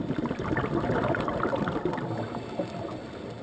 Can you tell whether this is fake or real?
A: real